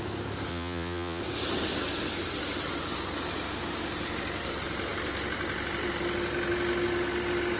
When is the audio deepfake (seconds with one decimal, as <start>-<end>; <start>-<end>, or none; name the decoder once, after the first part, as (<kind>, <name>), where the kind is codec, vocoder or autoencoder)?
0.5-1.2 (vocoder, Vocos)